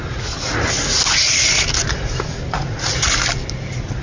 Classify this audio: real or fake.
real